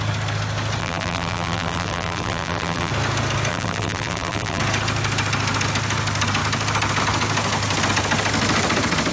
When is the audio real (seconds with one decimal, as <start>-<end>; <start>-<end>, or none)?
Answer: 0.0-0.8; 2.9-3.5; 4.6-9.1